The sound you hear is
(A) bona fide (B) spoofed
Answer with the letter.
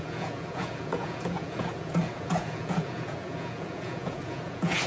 B